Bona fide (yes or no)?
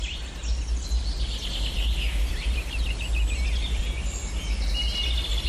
yes